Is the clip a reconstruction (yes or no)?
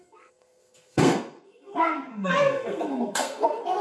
yes